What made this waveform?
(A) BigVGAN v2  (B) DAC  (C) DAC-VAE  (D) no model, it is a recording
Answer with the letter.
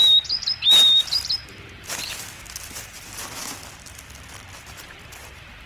D